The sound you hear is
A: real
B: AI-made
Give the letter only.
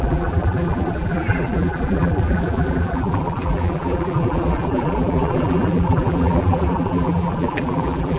B